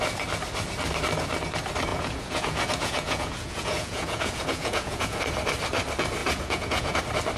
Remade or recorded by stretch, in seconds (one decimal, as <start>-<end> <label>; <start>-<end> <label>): 0.0-1.9 recorded; 1.9-5.2 remade; 5.2-6.2 recorded; 6.2-7.0 remade; 7.0-7.4 recorded